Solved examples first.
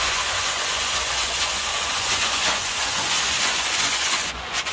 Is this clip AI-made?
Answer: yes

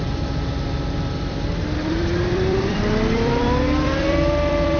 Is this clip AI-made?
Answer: yes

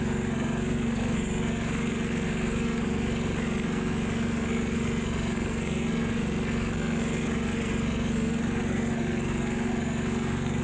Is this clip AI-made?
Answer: yes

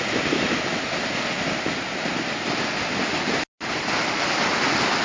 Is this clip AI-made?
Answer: no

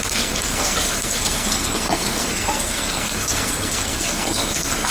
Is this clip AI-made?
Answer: yes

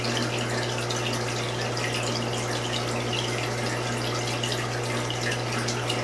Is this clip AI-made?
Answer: no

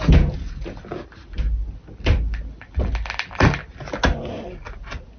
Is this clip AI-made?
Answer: no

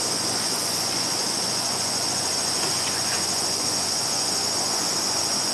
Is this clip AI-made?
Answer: yes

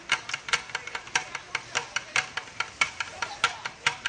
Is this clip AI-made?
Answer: no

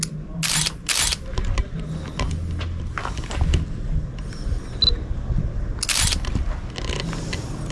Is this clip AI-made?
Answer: no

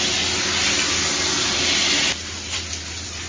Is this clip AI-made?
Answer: no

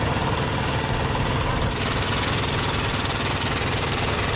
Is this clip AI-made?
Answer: no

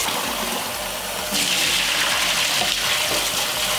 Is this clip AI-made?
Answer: no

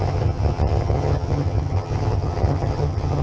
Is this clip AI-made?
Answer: yes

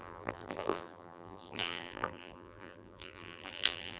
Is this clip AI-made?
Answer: yes